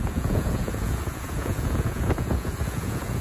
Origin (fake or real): fake